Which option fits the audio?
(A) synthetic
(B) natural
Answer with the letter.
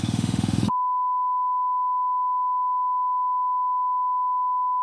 A